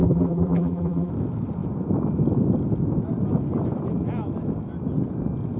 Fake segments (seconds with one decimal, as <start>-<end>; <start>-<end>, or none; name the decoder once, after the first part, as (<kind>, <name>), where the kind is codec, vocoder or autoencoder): 0.0-1.1 (vocoder, BigVGAN v2)